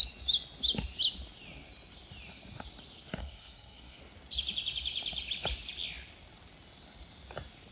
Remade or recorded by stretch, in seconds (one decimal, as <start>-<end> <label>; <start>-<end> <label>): 0.0-3.2 recorded; 3.2-4.0 remade; 4.0-7.7 recorded